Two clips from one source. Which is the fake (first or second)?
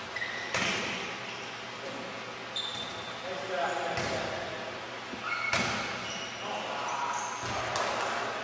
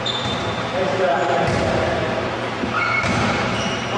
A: second